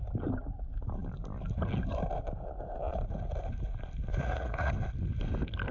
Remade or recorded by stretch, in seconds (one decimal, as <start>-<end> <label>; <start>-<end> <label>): 0.0-4.1 recorded; 4.1-4.7 remade; 4.7-5.7 recorded